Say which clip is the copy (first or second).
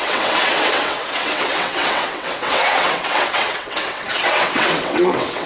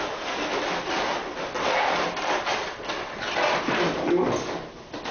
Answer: first